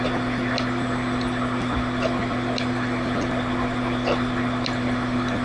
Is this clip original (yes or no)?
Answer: yes